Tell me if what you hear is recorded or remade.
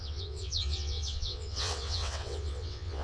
remade